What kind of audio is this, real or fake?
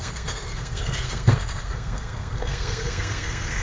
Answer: fake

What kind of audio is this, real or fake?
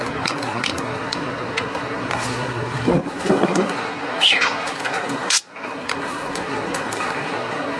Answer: fake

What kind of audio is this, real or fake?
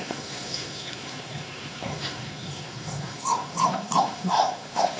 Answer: fake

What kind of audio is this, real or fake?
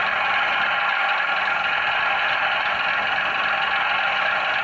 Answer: real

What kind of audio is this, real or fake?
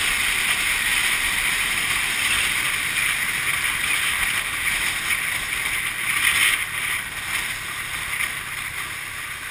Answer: real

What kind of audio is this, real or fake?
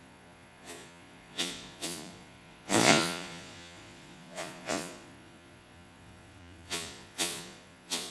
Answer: fake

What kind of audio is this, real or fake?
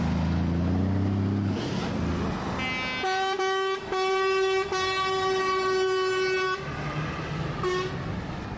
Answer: real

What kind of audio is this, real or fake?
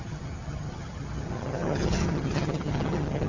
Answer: fake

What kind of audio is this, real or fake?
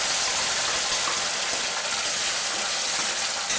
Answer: real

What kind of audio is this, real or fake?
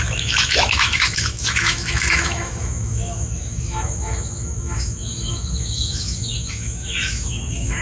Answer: fake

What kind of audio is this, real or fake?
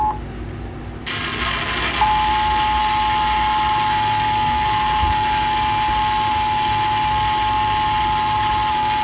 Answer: real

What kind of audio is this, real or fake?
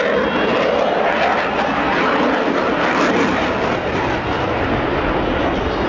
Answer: real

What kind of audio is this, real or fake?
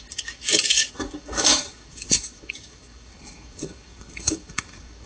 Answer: fake